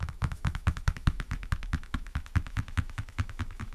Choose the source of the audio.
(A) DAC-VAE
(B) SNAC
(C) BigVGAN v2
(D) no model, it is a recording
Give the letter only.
A